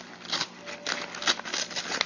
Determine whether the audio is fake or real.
real